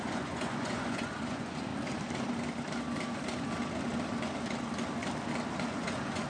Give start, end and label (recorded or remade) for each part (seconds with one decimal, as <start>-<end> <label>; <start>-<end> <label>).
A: 0.0-1.7 remade; 1.7-5.5 recorded; 5.5-6.3 remade